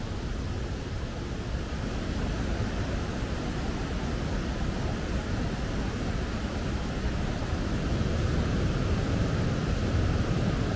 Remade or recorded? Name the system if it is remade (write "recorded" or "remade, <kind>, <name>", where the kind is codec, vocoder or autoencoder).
recorded